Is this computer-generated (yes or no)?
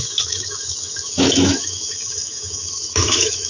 yes